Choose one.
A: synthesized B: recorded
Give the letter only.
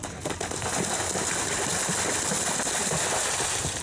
B